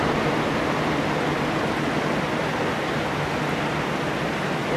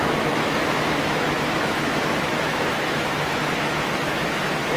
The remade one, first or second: second